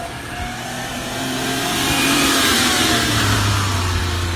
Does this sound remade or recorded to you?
remade